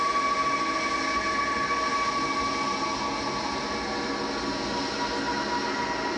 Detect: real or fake real